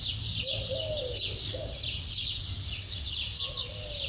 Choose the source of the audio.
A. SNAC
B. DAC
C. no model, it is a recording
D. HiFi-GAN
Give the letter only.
C